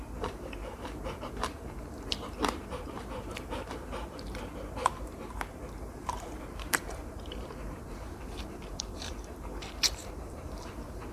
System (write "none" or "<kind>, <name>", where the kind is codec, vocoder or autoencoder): vocoder, BigVGAN v2